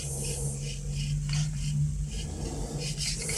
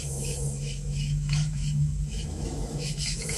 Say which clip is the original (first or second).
first